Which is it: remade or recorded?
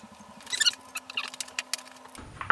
recorded